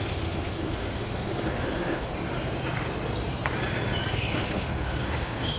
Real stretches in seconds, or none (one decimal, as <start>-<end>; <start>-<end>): 2.1-4.1